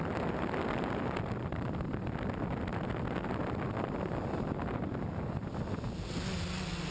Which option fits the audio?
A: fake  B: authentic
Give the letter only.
B